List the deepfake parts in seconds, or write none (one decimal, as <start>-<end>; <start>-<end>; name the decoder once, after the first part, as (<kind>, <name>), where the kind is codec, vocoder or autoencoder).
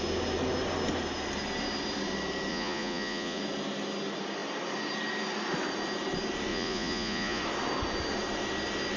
2.5-3.4 (vocoder, Vocos); 6.5-7.4